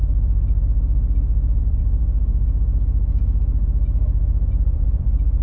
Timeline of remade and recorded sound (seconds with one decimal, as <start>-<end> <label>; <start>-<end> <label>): 0.0-1.6 recorded; 1.6-2.0 remade; 2.0-4.5 recorded; 4.5-5.4 remade